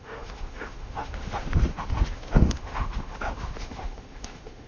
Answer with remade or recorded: remade